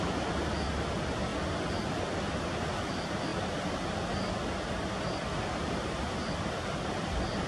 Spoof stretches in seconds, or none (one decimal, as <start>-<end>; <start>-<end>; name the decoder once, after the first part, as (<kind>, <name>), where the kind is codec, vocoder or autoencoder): 0.0-1.3 (vocoder, BigVGAN v2); 1.9-3.3; 6.5-7.5